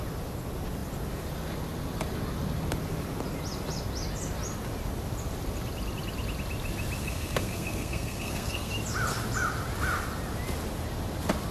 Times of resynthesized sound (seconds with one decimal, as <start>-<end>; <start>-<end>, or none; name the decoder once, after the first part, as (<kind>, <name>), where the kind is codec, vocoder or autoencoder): 7.0-8.7 (codec, SNAC)